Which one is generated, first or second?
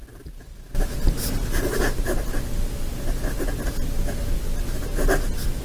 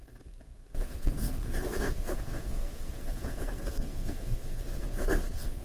second